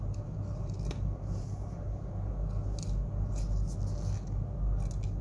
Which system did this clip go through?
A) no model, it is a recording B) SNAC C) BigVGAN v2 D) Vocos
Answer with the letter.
A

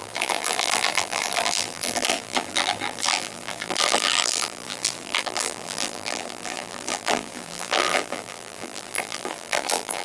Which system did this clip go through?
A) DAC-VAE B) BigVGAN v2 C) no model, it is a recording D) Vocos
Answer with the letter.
B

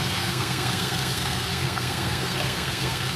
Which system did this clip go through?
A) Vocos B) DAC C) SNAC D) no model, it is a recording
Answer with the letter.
C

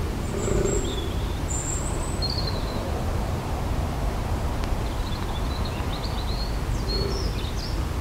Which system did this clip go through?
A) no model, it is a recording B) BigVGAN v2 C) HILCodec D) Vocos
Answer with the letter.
A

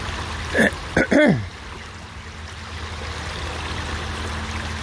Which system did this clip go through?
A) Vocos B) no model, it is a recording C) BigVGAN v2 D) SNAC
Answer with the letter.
B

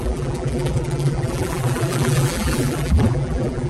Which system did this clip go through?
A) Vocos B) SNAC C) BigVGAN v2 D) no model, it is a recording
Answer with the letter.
C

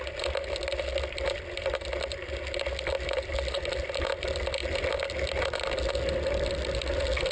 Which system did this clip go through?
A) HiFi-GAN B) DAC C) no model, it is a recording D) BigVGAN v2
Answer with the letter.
C